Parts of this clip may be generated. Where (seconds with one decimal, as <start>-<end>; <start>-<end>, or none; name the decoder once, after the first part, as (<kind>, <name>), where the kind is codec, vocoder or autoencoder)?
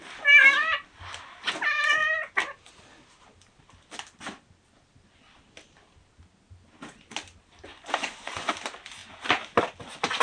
7.7-8.5 (vocoder, Vocos)